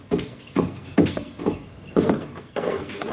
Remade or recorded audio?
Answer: remade